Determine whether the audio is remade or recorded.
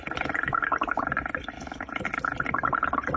recorded